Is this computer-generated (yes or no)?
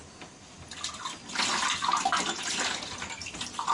no